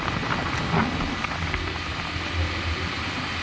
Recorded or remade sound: recorded